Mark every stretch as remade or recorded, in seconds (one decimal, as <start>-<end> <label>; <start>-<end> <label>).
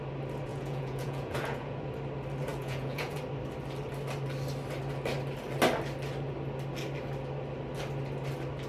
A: 0.0-0.5 recorded; 0.5-1.9 remade; 1.9-2.5 recorded; 2.5-3.2 remade; 3.2-8.7 recorded